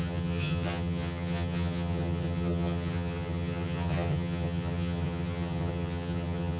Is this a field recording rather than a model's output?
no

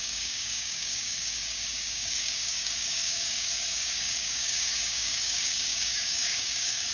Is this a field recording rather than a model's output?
no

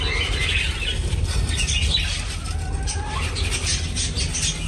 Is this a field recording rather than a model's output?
yes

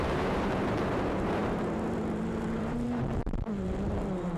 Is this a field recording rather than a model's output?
no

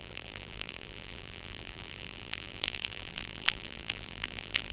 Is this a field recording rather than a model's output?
no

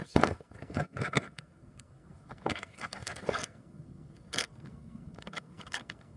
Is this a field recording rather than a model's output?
no